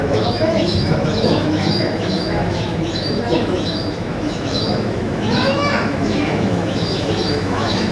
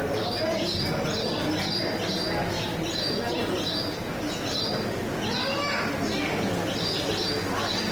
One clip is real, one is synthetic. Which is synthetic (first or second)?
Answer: first